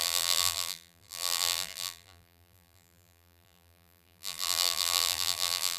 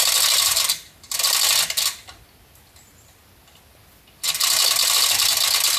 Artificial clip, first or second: first